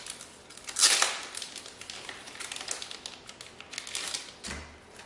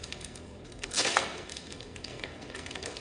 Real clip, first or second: first